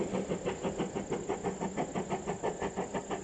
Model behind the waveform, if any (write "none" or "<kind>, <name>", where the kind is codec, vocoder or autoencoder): none